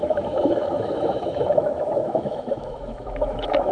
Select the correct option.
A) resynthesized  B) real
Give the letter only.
A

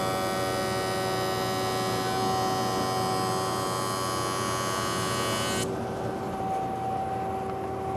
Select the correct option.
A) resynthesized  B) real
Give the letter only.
B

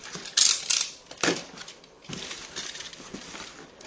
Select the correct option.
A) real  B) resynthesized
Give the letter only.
B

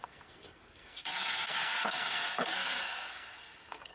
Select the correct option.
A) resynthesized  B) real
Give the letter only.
A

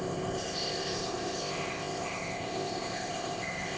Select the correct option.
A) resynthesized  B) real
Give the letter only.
A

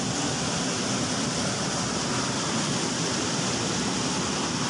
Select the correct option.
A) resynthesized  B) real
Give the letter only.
B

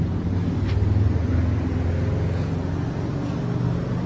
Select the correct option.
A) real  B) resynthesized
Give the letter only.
A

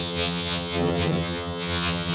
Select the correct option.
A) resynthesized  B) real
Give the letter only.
A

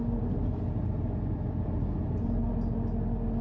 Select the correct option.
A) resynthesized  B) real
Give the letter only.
B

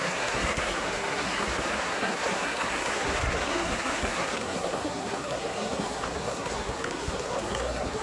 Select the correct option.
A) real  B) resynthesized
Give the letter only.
B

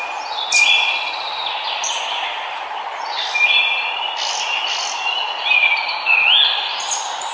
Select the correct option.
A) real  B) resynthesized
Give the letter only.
A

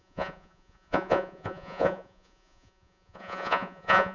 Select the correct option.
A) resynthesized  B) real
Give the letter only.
A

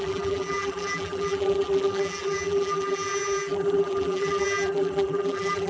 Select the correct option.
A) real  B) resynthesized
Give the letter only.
B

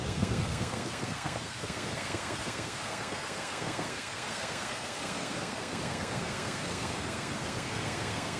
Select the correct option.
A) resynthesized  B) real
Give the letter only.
A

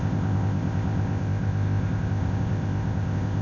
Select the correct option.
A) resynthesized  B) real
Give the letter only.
A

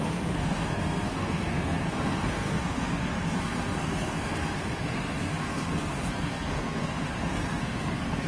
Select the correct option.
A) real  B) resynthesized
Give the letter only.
B